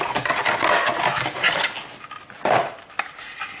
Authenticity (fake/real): real